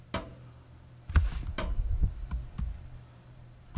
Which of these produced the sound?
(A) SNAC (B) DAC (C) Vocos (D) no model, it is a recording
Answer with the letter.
D